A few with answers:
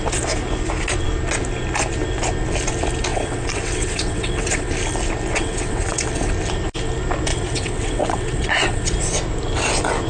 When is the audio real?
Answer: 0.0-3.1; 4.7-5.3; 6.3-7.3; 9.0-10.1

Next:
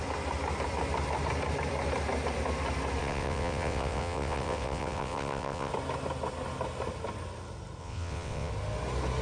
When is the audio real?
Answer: 0.0-3.0; 5.7-7.8; 8.5-9.2

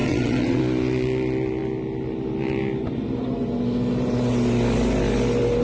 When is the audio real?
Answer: 0.6-5.6

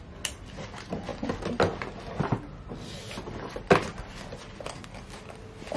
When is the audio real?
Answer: 0.0-5.8

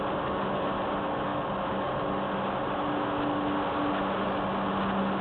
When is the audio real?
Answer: 0.0-5.2

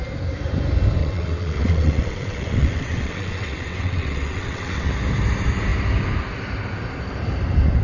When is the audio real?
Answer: 0.0-1.0; 4.9-7.8

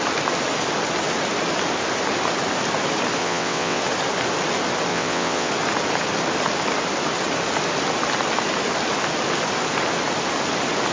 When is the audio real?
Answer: 0.0-3.2; 3.8-4.9; 5.5-10.9